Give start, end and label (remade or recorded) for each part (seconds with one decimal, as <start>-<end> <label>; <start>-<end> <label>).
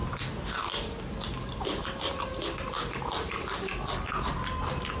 0.0-5.0 recorded